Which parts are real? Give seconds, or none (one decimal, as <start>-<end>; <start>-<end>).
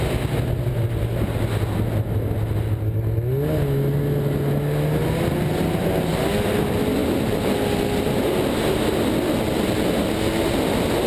0.0-11.1